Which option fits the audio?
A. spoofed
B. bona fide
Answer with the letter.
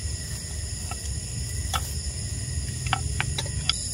B